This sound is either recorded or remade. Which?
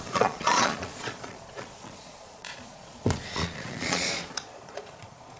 remade